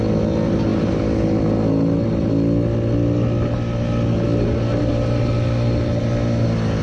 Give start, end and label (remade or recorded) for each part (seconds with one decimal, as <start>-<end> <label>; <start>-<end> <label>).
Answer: 0.0-6.8 recorded